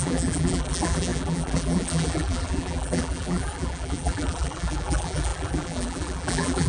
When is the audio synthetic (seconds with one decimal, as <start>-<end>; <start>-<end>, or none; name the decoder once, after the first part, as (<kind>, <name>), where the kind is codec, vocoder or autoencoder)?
0.0-6.7 (vocoder, BigVGAN v2)